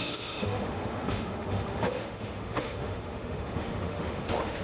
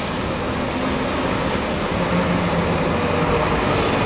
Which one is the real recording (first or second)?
second